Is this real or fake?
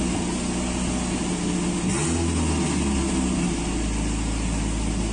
real